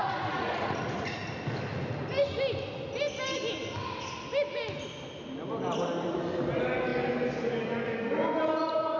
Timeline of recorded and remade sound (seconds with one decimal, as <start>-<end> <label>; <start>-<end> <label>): 0.0-1.3 remade; 1.3-9.0 recorded